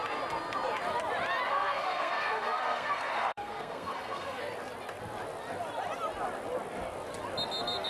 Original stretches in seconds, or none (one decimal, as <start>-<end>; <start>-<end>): 0.0-1.5; 4.4-7.9